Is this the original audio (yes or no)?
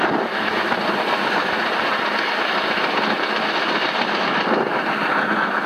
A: yes